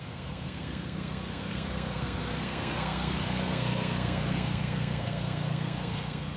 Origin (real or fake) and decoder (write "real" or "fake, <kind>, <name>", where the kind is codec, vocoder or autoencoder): fake, codec, SNAC